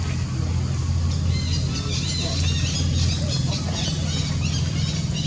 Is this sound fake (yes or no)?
no